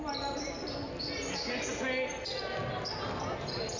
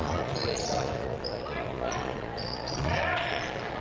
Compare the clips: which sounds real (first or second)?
first